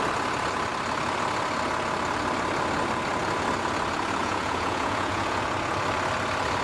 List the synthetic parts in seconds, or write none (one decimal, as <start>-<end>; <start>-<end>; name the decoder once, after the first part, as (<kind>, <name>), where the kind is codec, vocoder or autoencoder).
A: 4.2-5.4 (vocoder, Vocos)